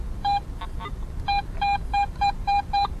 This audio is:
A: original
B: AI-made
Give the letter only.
B